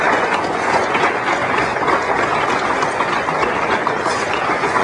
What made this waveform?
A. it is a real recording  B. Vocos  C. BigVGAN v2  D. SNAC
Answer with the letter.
B